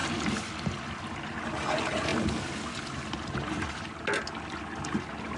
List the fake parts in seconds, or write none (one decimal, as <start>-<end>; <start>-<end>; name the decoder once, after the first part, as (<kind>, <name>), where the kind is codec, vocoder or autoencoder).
0.0-1.0 (vocoder, BigVGAN v2)